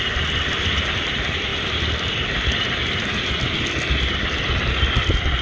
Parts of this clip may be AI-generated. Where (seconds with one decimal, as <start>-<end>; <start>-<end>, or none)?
0.0-1.5; 4.7-5.4